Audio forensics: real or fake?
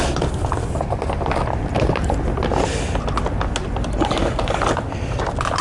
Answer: real